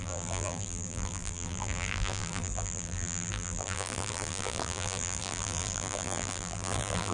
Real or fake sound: fake